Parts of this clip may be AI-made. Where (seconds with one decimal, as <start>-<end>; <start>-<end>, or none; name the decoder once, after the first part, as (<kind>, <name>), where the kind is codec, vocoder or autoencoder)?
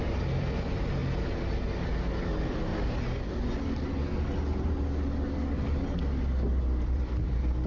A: 0.0-1.0 (vocoder, BigVGAN v2); 2.3-2.7; 6.6-7.7